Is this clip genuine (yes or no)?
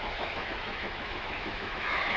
no